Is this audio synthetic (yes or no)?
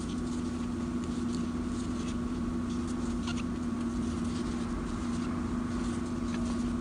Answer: no